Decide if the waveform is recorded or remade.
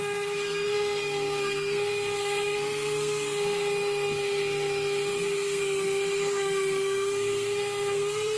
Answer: remade